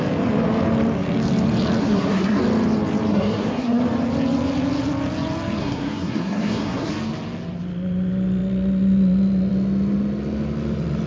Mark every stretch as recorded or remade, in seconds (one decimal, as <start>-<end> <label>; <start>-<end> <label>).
0.0-1.8 recorded; 1.8-2.4 remade; 2.4-3.1 recorded; 3.1-3.8 remade; 3.8-5.6 recorded; 5.6-6.9 remade; 6.9-11.1 recorded